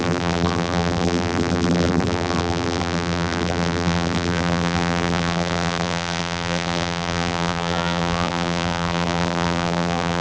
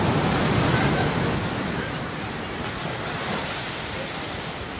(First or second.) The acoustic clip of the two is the second